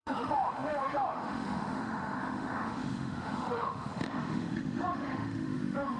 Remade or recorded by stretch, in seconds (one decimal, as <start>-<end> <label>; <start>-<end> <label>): 0.0-6.0 remade